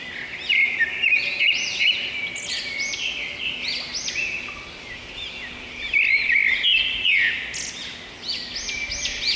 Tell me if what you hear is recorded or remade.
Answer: recorded